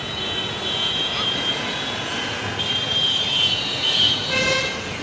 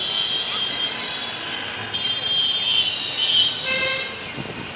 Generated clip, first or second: first